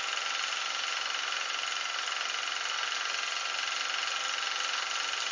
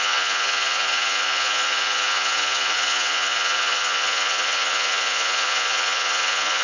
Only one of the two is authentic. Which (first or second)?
first